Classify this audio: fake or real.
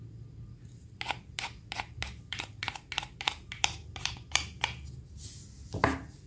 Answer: real